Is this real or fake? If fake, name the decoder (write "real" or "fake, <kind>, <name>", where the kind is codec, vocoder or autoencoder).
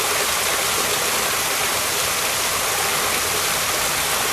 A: real